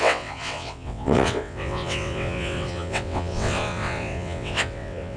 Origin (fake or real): fake